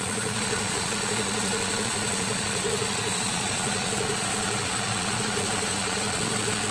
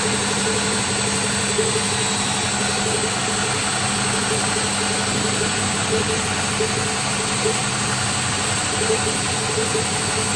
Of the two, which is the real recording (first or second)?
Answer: second